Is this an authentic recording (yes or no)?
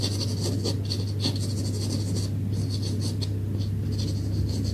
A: yes